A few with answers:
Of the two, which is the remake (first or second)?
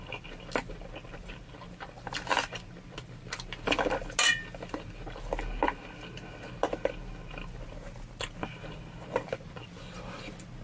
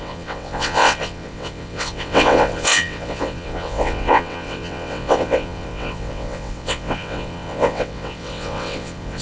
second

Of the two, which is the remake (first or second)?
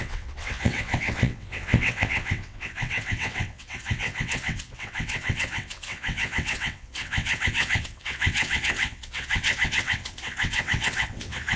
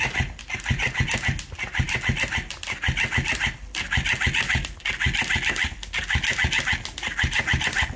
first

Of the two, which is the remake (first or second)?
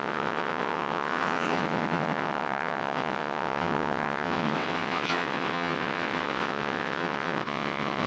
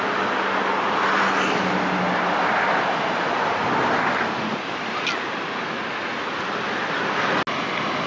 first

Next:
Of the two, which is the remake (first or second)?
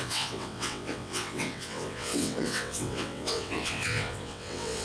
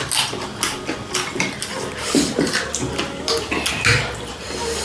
first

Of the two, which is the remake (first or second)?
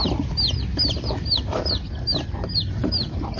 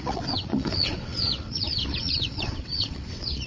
second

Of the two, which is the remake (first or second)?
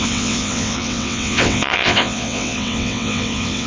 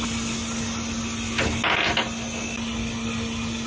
first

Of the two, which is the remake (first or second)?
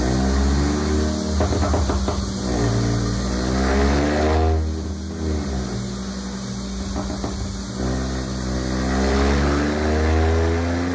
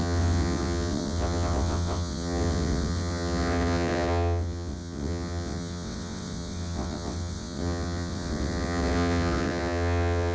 second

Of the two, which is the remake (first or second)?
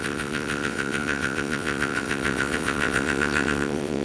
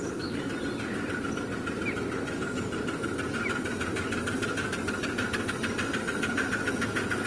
first